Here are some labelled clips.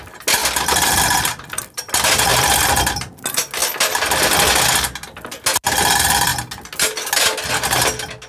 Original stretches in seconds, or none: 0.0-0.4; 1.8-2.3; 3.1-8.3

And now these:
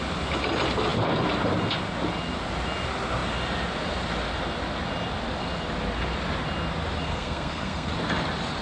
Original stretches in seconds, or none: 0.0-7.1; 7.9-8.6